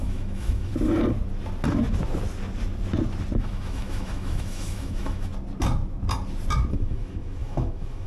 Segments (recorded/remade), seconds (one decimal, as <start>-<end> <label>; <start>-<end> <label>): 0.0-0.7 remade; 0.7-3.4 recorded; 3.4-5.3 remade; 5.3-6.7 recorded; 6.7-8.1 remade